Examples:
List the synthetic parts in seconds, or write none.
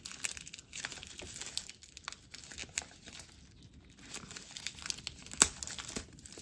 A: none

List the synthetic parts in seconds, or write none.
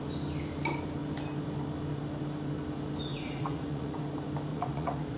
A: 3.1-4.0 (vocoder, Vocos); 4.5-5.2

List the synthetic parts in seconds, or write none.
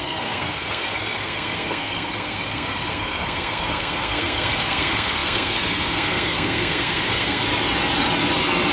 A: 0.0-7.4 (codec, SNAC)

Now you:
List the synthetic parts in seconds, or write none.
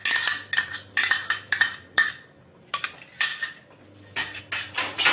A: none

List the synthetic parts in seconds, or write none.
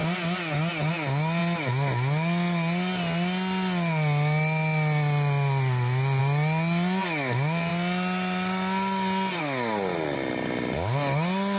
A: none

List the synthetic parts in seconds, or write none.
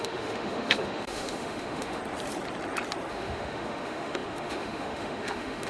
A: 0.0-2.0 (autoencoder, DAC-VAE); 3.1-5.7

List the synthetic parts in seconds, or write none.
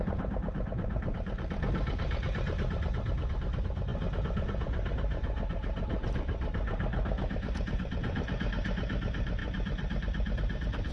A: 0.0-10.9 (vocoder, BigVGAN v2)